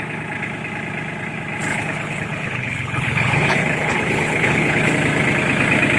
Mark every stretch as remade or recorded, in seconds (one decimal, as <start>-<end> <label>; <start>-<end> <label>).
0.0-1.7 recorded; 1.7-4.9 remade; 4.9-6.0 recorded